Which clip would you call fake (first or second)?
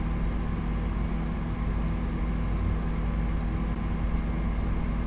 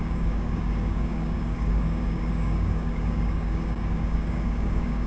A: second